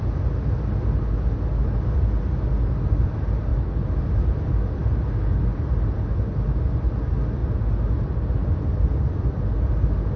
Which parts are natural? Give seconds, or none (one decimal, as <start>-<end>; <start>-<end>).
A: 0.0-10.2